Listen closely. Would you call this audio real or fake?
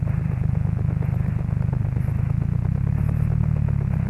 real